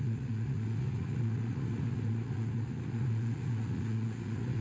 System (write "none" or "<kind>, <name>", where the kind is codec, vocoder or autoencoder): vocoder, Vocos